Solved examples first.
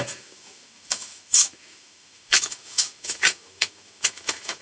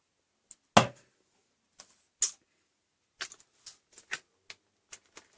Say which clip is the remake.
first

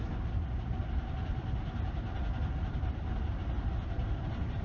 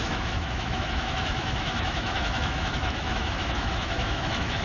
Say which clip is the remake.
second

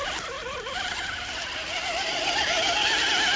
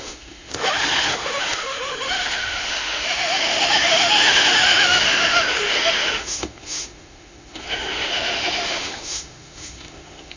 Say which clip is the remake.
second